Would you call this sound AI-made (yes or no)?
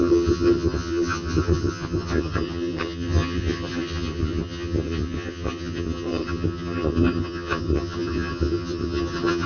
yes